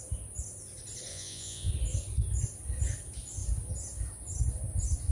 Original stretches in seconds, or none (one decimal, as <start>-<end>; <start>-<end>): 0.0-1.1; 1.7-5.1